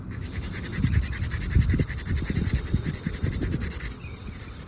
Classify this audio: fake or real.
real